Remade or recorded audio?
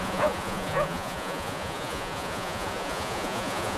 remade